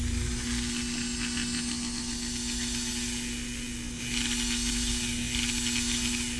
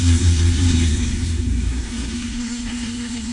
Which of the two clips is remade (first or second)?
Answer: second